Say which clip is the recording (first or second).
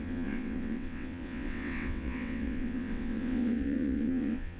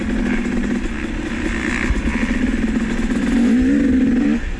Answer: second